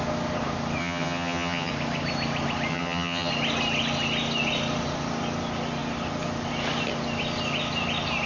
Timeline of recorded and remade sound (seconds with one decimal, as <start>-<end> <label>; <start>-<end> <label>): 0.0-0.8 recorded; 0.8-1.7 remade; 1.7-2.7 recorded; 2.7-3.3 remade; 3.3-8.3 recorded